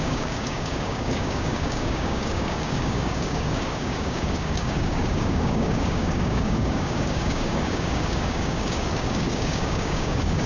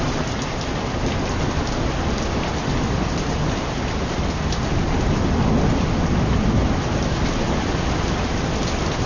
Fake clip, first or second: first